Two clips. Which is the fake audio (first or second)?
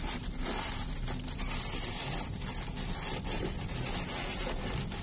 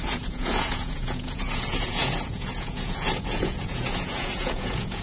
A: second